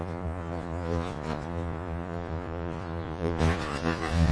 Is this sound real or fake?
fake